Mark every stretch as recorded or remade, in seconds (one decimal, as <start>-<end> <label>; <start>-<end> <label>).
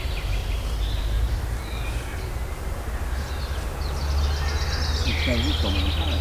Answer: 0.0-0.4 recorded; 0.4-1.4 remade; 1.4-6.2 recorded